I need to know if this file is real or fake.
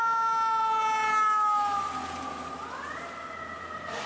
real